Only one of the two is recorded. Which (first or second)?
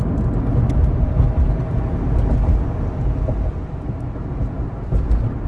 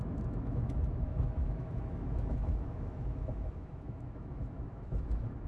first